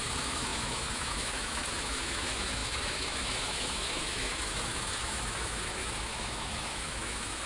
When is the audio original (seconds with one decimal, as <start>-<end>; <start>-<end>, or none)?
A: none